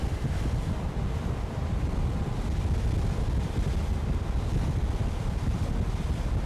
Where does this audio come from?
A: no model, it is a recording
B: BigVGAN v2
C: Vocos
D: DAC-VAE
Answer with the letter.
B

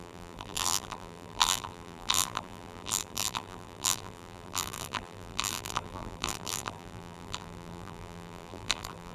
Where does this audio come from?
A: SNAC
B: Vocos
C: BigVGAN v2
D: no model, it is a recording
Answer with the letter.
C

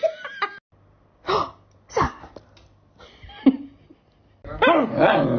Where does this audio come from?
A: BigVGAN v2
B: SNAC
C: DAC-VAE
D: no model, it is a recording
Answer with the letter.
D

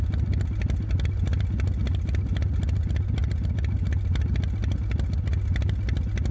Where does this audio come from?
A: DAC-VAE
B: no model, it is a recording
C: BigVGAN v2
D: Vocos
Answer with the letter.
B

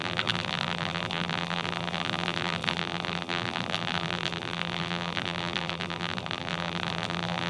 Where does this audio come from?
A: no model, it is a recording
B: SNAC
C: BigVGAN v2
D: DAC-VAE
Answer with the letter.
C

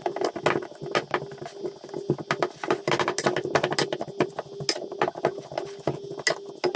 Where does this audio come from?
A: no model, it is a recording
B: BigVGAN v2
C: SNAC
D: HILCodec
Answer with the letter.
A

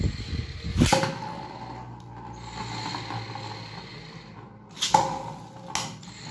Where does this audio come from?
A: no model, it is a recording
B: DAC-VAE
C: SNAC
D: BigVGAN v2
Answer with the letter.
A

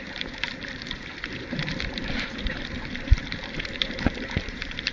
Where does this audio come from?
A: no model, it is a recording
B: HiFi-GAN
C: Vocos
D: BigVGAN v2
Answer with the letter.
D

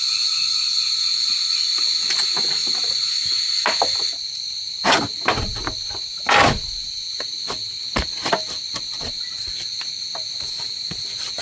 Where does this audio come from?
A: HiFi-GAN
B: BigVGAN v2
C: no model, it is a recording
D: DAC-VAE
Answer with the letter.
C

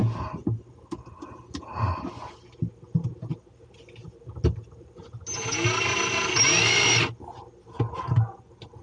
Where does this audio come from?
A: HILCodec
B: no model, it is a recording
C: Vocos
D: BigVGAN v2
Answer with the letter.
B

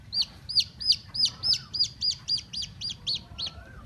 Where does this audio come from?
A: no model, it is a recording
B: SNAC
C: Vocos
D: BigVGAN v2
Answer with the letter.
D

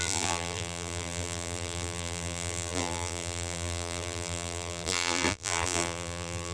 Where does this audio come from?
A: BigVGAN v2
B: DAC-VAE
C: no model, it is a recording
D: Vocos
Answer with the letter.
A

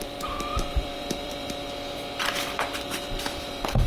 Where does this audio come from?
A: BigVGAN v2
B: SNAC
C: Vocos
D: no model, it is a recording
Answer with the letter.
A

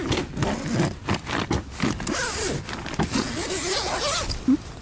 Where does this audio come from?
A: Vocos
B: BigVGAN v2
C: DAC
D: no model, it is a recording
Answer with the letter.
D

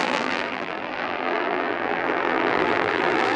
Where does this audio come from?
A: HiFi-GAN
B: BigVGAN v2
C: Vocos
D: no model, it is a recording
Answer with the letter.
B